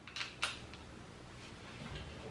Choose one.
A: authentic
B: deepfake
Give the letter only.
A